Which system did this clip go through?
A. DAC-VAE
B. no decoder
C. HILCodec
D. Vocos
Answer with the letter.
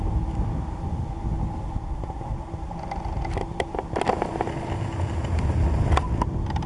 B